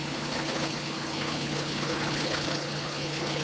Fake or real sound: fake